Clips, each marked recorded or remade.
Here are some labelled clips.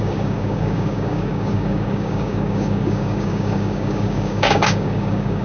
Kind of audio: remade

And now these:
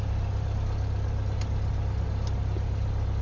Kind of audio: recorded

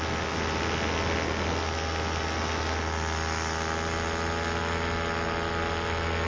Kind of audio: recorded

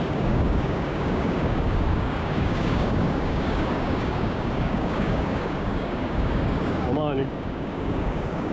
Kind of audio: remade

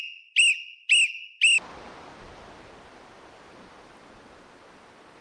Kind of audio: recorded